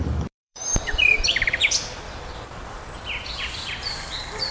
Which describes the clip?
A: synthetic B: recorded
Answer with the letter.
A